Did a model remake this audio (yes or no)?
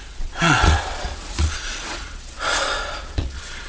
yes